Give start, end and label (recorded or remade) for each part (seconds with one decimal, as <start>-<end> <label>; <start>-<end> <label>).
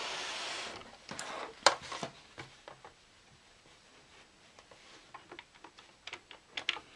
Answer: 0.0-7.0 recorded